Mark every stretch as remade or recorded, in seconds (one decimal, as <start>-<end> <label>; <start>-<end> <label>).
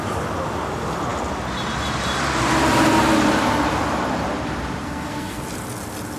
0.0-4.8 recorded; 4.8-5.4 remade; 5.4-6.2 recorded